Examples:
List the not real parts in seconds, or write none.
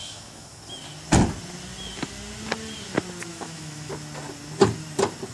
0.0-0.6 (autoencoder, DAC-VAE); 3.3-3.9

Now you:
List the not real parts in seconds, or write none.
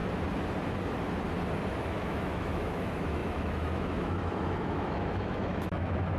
1.7-6.2 (autoencoder, DAC-VAE)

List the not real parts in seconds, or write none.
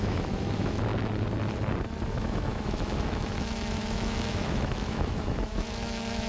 0.0-0.9 (autoencoder, DAC-VAE); 2.1-6.3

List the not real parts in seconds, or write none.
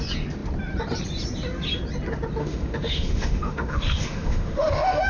2.4-5.1 (autoencoder, DAC-VAE)